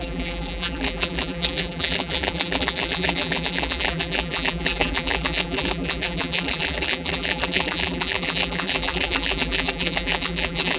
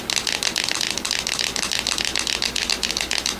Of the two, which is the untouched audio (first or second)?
second